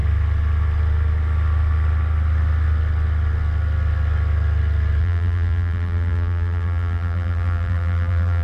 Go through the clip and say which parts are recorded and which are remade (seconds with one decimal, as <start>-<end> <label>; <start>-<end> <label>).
0.0-5.0 recorded; 5.0-8.4 remade

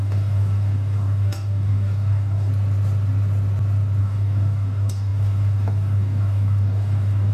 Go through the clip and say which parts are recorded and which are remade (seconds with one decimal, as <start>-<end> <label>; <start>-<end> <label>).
0.0-2.5 remade; 2.5-4.0 recorded; 4.0-7.3 remade